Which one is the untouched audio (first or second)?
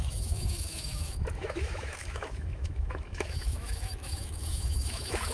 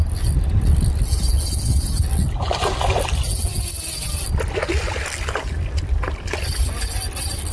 second